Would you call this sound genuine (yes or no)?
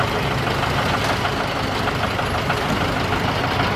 yes